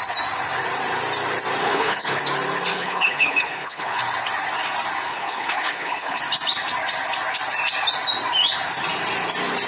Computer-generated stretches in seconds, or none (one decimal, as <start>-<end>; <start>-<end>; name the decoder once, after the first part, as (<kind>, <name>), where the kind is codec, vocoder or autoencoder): 1.6-2.2 (codec, HILCodec); 2.7-4.0; 5.1-6.2